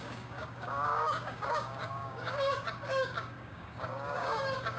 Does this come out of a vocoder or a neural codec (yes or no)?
yes